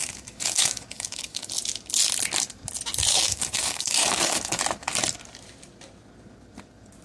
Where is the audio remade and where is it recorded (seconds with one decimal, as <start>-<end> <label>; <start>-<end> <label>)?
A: 0.0-1.5 remade; 1.5-3.1 recorded; 3.1-4.6 remade; 4.6-7.0 recorded